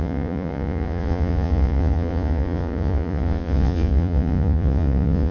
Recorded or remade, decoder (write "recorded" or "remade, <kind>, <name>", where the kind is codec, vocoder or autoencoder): remade, vocoder, Vocos